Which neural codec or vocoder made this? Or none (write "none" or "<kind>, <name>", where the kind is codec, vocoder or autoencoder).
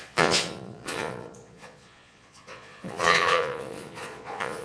vocoder, Vocos